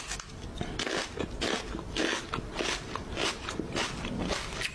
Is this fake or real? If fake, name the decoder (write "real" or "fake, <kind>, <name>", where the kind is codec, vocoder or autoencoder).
real